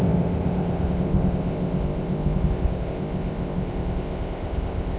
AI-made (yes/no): yes